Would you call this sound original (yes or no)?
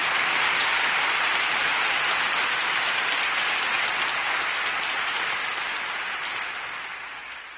yes